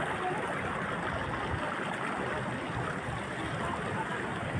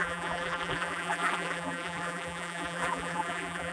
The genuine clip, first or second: first